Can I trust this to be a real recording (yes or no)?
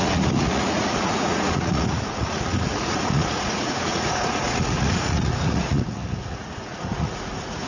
no